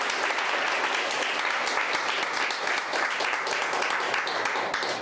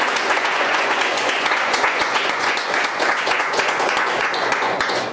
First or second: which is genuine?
first